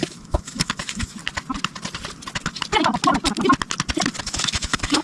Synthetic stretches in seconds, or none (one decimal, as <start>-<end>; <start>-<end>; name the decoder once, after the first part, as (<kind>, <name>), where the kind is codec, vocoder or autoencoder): 0.0-1.2 (autoencoder, DAC-VAE); 4.2-5.0